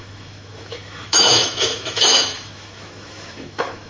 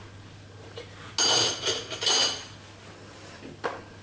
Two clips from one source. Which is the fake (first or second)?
first